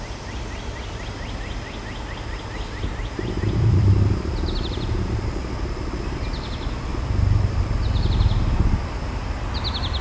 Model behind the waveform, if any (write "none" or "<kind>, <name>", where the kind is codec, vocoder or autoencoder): none